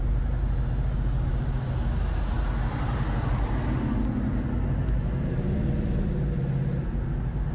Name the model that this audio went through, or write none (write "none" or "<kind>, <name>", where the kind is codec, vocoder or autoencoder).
none